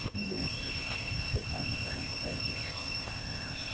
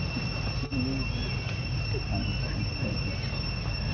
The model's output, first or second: first